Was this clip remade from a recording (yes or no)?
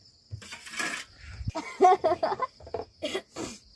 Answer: no